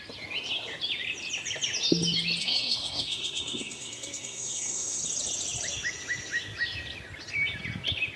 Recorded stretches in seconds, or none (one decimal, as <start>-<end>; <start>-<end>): 0.0-2.4; 5.0-8.2